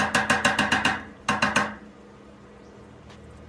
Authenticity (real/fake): real